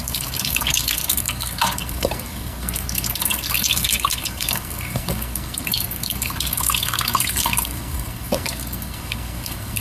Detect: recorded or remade remade